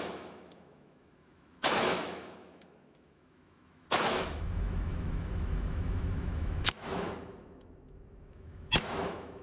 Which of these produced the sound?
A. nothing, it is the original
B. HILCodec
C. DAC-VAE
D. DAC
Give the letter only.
C